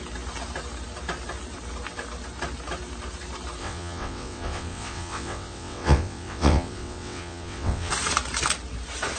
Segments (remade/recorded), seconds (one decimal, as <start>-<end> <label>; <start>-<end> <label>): 0.0-3.6 recorded; 3.6-7.9 remade; 7.9-9.2 recorded